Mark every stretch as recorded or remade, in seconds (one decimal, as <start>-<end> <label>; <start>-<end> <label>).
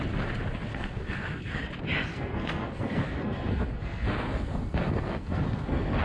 0.0-0.7 recorded; 0.7-1.6 remade; 1.6-2.1 recorded; 2.1-6.0 remade